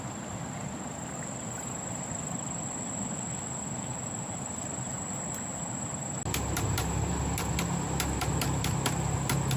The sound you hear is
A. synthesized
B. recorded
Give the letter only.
B